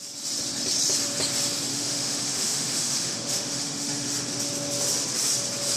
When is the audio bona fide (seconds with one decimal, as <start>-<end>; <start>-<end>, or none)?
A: 0.0-1.7; 4.2-5.8